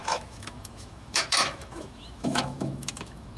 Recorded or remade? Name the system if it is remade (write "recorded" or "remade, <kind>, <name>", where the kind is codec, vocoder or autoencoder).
remade, autoencoder, DAC-VAE